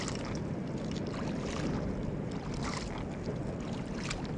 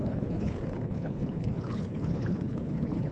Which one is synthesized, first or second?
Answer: second